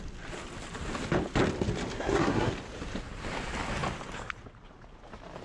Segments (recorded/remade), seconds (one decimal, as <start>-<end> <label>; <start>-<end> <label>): 0.0-1.9 recorded; 1.9-2.5 remade; 2.5-5.4 recorded